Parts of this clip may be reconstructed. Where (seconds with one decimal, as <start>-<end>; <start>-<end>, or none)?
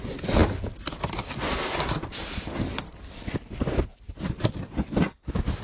none